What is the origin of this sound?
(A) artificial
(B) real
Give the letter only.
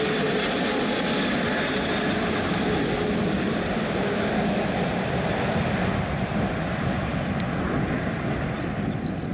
B